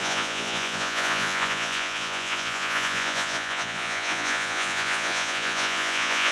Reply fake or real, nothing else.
fake